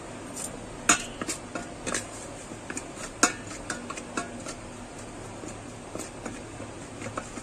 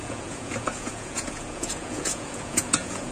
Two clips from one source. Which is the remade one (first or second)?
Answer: second